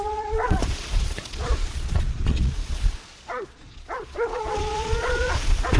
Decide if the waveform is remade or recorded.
remade